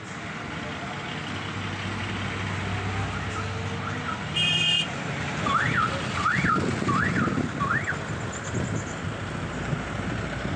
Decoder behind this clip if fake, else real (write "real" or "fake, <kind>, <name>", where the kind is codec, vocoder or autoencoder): real